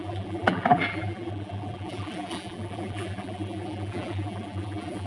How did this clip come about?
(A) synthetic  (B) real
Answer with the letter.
A